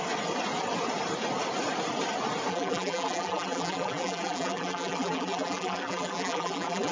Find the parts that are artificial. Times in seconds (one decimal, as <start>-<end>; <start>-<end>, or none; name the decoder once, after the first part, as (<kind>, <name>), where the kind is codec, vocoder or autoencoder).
2.5-6.9 (vocoder, BigVGAN v2)